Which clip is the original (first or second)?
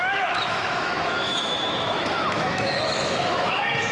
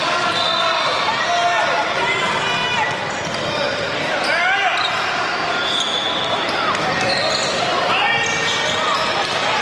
second